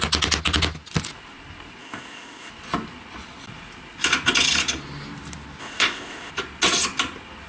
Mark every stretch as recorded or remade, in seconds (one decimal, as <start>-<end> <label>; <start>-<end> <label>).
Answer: 0.0-1.8 recorded; 1.8-2.5 remade; 2.5-5.6 recorded; 5.6-6.3 remade; 6.3-7.5 recorded